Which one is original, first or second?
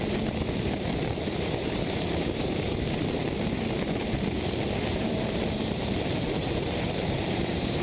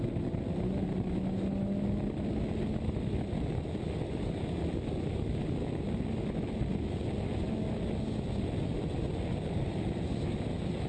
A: second